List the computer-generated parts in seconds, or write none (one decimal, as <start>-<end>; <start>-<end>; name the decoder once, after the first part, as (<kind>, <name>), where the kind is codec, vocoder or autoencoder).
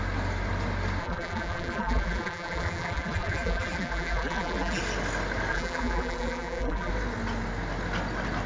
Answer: 1.0-4.8 (vocoder, BigVGAN v2); 5.5-6.9